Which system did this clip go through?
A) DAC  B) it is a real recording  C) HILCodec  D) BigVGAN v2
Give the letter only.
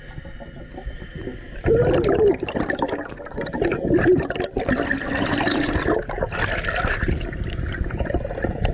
B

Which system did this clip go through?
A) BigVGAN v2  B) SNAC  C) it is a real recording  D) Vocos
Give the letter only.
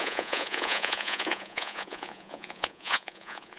D